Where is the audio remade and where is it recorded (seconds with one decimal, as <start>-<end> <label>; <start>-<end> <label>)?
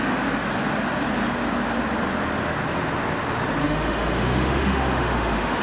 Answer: 0.0-3.6 recorded; 3.6-5.6 remade